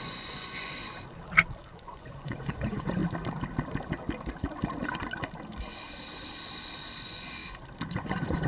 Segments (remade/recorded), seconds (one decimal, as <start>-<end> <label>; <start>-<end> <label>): 0.0-0.8 remade; 0.8-1.7 recorded; 1.7-3.0 remade; 3.0-7.0 recorded; 7.0-7.4 remade; 7.4-7.9 recorded; 7.9-8.5 remade